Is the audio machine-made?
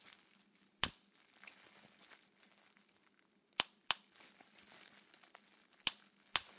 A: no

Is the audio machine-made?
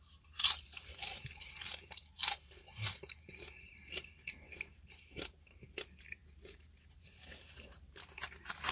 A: yes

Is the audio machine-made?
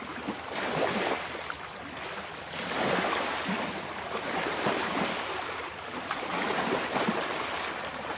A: yes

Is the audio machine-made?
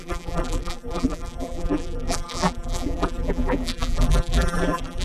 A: yes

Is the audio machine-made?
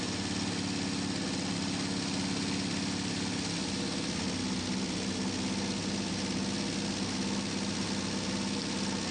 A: no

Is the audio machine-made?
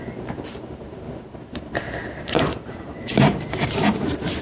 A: yes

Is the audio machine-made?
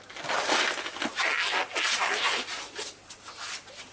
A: no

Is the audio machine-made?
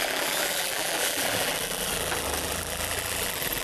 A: yes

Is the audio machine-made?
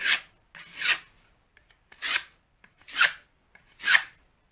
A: no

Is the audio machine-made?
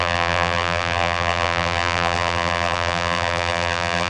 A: yes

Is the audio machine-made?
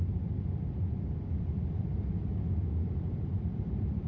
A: yes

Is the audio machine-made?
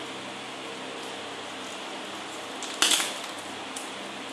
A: no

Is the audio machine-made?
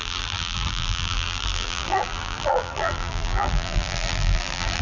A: yes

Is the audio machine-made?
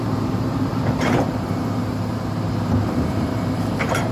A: yes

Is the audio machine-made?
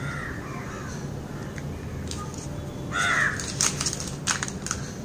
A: no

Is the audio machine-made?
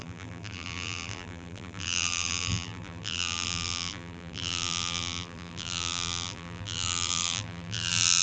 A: yes